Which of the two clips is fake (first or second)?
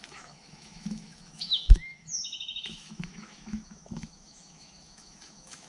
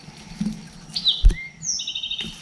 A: first